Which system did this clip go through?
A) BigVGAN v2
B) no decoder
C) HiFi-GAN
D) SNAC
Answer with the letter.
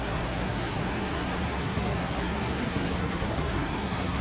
D